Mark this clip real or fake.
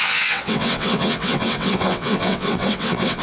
fake